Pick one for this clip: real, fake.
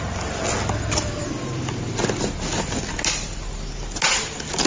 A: real